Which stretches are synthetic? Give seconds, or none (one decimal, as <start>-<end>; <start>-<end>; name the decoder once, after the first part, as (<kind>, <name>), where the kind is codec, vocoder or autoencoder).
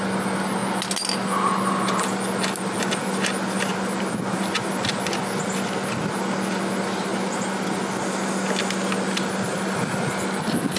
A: none